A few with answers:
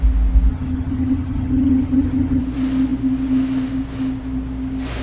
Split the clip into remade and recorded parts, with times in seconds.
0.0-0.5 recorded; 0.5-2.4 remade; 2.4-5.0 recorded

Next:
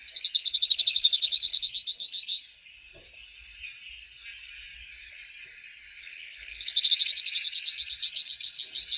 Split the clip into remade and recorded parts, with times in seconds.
0.0-0.4 recorded; 0.4-1.6 remade; 1.6-6.0 recorded; 6.0-6.9 remade; 6.9-9.0 recorded

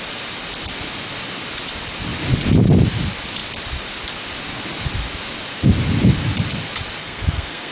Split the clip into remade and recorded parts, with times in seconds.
0.0-7.0 recorded; 7.0-7.7 remade

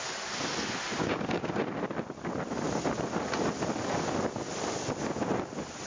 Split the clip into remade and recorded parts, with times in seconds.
0.0-1.0 recorded; 1.0-1.5 remade; 1.5-5.9 recorded